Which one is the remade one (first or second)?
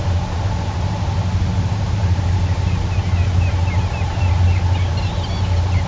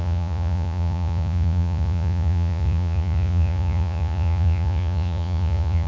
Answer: second